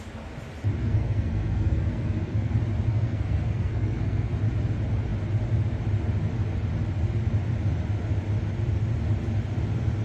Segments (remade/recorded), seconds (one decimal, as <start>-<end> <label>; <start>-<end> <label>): 0.0-0.8 recorded; 0.8-2.5 remade; 2.5-2.9 recorded; 2.9-4.3 remade; 4.3-10.0 recorded